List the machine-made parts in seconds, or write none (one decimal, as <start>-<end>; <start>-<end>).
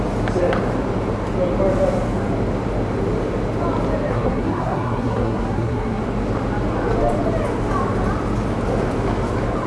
4.1-6.0